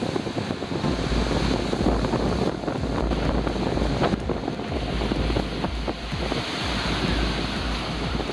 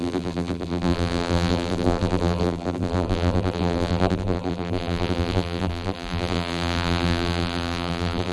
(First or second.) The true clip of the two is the first